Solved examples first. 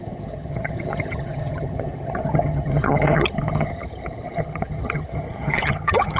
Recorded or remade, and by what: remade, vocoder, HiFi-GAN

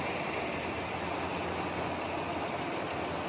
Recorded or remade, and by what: recorded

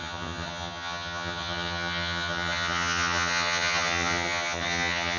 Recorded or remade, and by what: remade, vocoder, HiFi-GAN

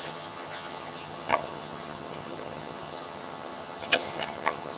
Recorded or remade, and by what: remade, vocoder, HiFi-GAN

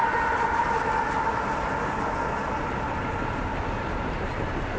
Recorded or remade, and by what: recorded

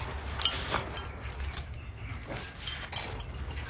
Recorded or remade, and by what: recorded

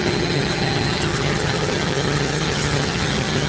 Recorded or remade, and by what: remade, vocoder, HiFi-GAN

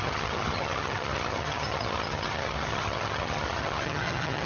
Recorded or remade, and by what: remade, vocoder, HiFi-GAN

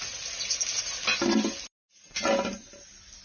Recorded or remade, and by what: recorded